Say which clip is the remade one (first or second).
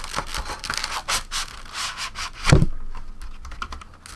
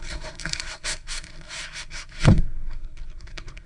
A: second